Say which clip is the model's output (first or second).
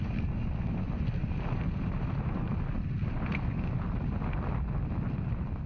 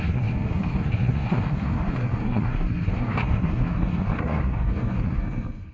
second